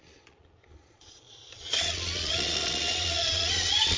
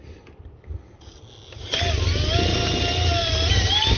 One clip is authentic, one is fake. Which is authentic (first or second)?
second